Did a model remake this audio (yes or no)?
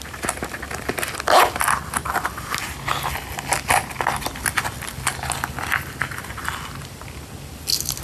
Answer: no